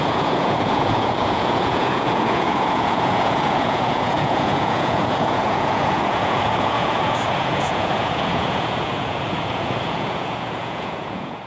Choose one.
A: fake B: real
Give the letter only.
A